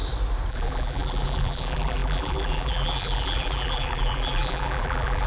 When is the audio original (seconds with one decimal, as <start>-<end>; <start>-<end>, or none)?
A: 0.0-0.5